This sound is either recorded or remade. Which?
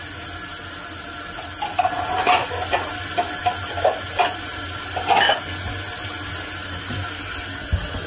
recorded